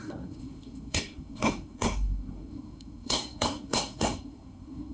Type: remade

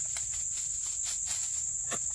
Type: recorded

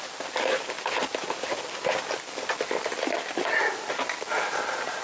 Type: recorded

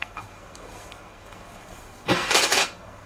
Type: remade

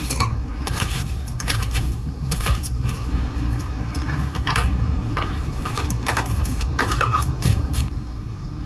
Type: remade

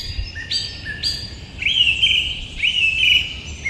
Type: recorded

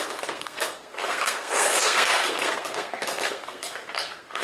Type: remade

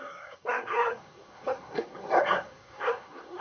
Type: remade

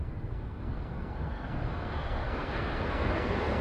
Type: remade